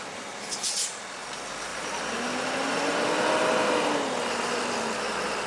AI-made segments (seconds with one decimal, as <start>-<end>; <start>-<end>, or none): none

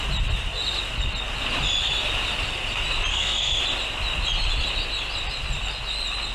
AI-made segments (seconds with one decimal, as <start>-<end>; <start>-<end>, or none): 3.1-3.6

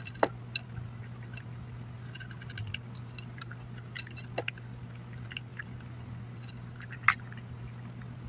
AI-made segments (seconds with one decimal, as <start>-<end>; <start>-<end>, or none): none

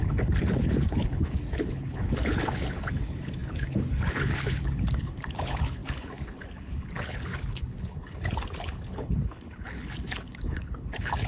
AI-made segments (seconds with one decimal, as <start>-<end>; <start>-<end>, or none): 0.0-11.3

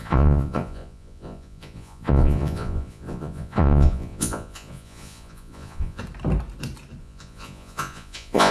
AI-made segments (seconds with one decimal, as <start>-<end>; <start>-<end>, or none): 0.0-6.0; 7.0-8.5

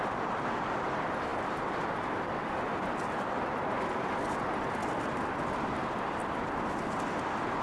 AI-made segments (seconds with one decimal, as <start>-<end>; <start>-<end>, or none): none

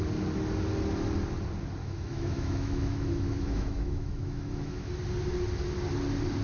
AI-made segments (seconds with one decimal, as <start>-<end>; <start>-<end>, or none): 1.8-4.9

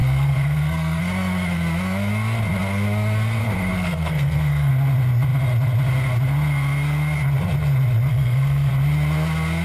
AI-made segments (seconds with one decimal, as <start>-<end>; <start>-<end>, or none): 0.0-1.0; 3.4-4.7; 8.1-8.7